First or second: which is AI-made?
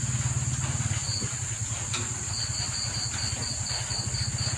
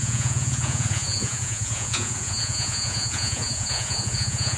second